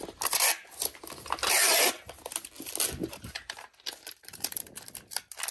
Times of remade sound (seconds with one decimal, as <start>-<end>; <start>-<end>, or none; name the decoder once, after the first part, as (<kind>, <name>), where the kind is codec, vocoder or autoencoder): 3.0-4.6 (vocoder, BigVGAN v2)